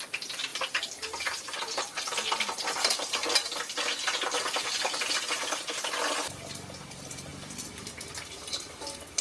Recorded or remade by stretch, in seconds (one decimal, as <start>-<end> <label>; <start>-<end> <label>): 0.0-9.2 recorded